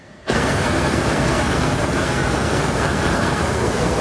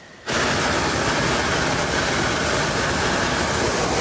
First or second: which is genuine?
second